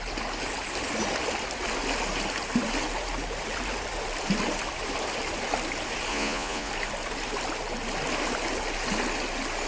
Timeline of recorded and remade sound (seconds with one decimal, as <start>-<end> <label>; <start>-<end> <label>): 0.0-6.1 recorded; 6.1-6.7 remade; 6.7-9.7 recorded